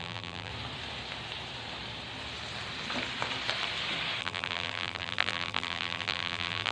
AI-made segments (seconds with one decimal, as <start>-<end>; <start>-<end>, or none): 0.0-0.5; 4.2-6.7